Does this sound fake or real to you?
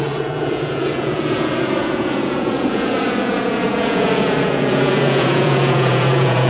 fake